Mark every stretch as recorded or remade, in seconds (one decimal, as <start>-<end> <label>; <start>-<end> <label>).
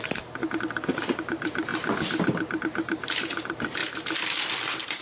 0.0-0.4 remade; 0.4-1.0 recorded; 1.0-1.7 remade; 1.7-2.6 recorded; 2.6-3.8 remade; 3.8-5.0 recorded